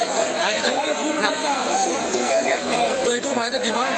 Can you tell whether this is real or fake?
fake